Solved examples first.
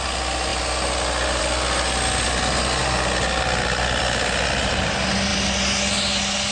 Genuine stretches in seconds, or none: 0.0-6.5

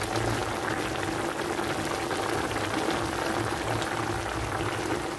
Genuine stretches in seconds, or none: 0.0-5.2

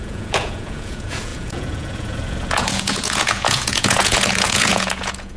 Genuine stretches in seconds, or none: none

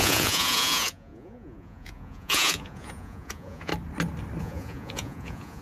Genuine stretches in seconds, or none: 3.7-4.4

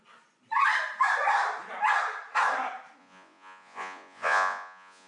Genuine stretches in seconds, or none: 0.0-3.0